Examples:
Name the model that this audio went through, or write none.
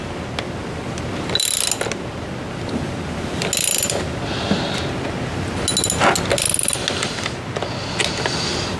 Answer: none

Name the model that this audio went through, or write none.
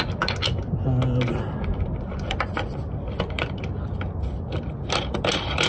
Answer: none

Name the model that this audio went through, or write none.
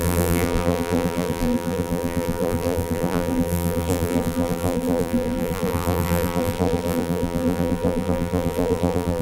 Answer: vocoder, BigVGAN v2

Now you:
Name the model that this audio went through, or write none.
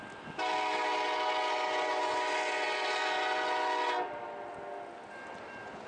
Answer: none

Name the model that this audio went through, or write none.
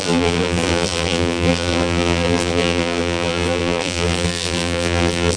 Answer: vocoder, BigVGAN v2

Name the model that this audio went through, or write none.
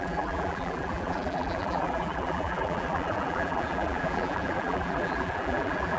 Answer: vocoder, BigVGAN v2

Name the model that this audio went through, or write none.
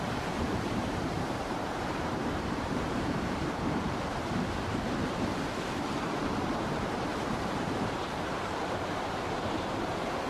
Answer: vocoder, BigVGAN v2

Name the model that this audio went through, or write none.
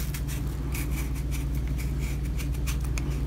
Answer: none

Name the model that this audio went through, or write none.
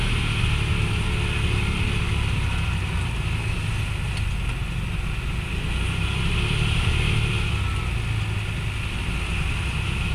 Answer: none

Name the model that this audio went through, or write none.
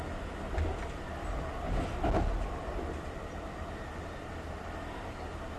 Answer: none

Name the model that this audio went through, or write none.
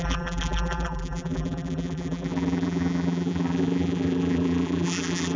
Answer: vocoder, BigVGAN v2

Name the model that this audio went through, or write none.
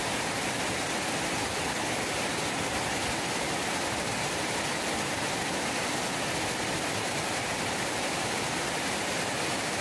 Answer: vocoder, BigVGAN v2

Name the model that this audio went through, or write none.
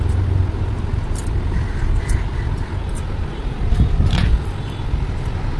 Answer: none